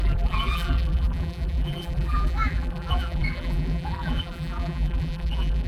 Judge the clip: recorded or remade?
remade